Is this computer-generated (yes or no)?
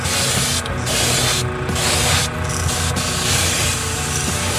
no